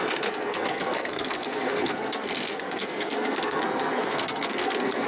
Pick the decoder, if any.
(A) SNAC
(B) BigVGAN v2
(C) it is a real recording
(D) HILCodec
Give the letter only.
A